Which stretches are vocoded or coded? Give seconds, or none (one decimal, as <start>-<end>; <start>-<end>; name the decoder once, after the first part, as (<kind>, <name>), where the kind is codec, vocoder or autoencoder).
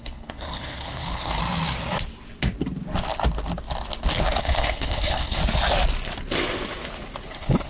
0.0-1.4 (codec, HILCodec); 4.4-5.4; 7.3-7.7